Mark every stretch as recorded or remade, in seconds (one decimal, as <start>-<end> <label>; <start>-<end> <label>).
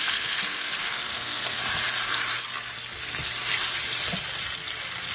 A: 0.0-1.6 remade; 1.6-5.1 recorded